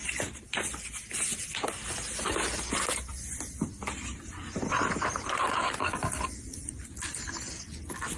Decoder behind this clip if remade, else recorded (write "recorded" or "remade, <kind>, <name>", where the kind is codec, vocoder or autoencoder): recorded